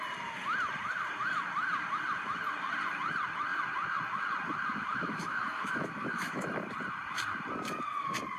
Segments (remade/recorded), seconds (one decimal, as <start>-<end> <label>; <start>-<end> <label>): 0.0-4.7 recorded; 4.7-6.5 remade; 6.5-8.4 recorded